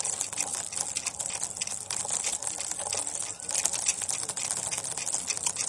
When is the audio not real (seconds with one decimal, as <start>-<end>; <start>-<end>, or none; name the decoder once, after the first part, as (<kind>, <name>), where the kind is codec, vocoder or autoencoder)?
none